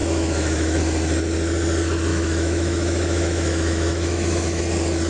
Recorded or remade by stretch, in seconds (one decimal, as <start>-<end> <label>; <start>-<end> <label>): 0.0-0.8 remade; 0.8-2.1 recorded; 2.1-4.6 remade; 4.6-5.1 recorded